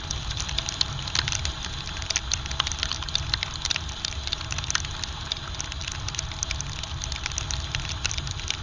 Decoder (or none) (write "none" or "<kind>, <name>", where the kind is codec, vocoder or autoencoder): none